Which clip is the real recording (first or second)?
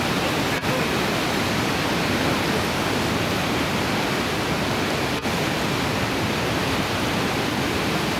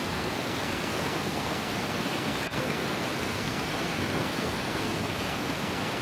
first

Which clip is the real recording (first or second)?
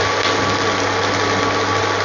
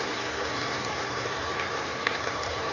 first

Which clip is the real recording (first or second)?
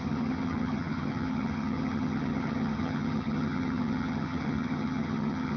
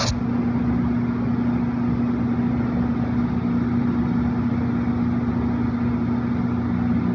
second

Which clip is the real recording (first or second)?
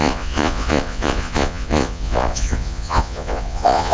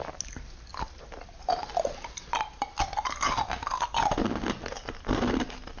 second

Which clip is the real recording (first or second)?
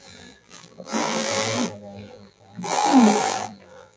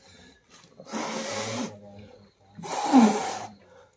second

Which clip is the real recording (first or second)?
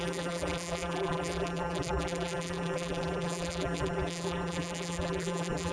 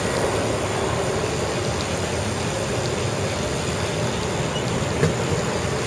second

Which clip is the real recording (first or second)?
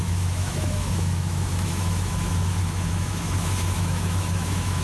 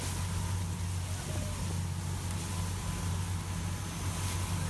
second